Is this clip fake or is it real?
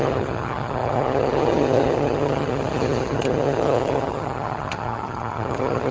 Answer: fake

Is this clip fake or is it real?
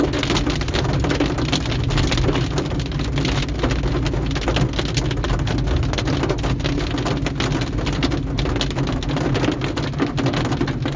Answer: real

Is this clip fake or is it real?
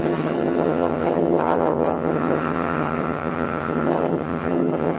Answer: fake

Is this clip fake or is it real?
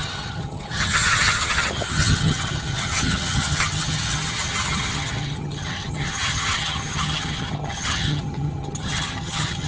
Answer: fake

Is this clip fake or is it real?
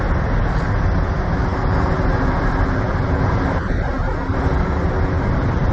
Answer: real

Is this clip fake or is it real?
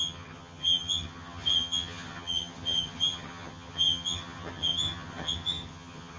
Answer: fake